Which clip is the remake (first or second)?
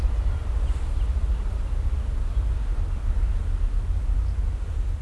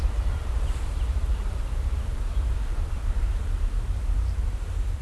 second